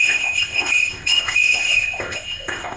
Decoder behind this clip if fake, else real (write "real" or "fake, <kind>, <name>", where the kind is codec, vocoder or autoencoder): fake, codec, ZipCodec